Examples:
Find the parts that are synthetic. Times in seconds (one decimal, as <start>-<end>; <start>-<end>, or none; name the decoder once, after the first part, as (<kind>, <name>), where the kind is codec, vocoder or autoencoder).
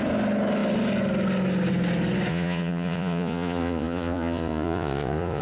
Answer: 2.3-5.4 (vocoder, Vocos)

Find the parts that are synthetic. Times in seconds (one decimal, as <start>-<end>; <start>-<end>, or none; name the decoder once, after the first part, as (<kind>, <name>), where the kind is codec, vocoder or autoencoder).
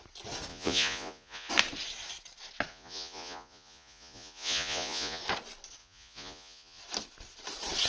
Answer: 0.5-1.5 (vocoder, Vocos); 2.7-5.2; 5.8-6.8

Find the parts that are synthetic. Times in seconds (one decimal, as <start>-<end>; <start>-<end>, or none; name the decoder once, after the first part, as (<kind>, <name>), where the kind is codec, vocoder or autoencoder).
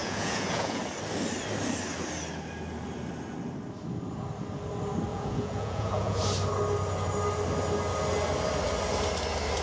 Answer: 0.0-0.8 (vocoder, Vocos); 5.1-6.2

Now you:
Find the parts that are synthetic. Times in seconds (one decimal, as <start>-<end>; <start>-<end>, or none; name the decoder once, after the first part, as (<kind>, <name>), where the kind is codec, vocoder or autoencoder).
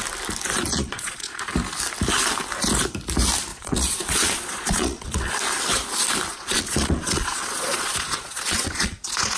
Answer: 0.7-1.5 (vocoder, Vocos); 3.5-5.3; 6.3-9.4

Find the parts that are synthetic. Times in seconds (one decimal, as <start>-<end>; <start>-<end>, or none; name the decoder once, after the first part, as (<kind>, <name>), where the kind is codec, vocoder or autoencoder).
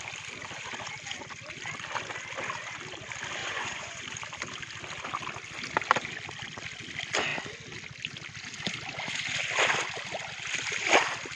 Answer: 3.4-4.0 (vocoder, Vocos)